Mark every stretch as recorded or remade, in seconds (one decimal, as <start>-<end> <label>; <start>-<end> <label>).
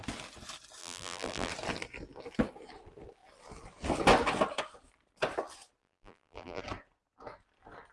0.0-0.8 recorded; 0.8-1.5 remade; 1.5-5.8 recorded; 5.8-6.6 remade; 6.6-7.9 recorded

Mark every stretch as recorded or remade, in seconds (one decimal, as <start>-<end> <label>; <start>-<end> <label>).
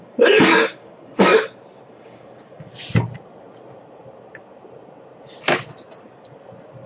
0.0-1.3 remade; 1.3-1.9 recorded; 1.9-2.7 remade; 2.7-6.9 recorded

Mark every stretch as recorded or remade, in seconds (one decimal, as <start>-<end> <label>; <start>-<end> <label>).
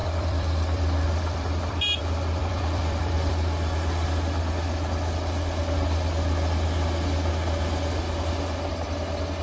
0.0-2.0 remade; 2.0-2.4 recorded; 2.4-3.3 remade; 3.3-9.4 recorded